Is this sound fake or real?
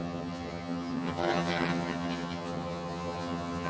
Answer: fake